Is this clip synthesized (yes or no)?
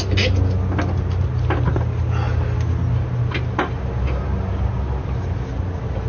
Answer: no